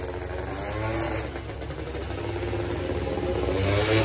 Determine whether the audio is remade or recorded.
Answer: recorded